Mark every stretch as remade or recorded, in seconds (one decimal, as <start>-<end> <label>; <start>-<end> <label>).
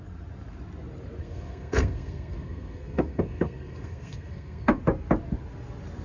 0.0-1.2 recorded; 1.2-4.8 remade; 4.8-6.0 recorded